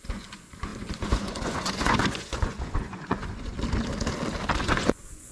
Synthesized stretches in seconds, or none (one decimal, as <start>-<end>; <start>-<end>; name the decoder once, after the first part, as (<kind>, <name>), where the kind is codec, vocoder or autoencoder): 0.0-3.5 (vocoder, Vocos); 4.6-5.3